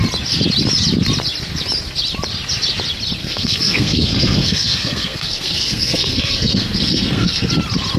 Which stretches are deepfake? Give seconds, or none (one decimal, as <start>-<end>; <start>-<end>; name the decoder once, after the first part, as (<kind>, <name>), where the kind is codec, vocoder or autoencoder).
3.2-7.5 (codec, SNAC)